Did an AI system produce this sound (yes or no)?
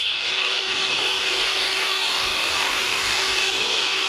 yes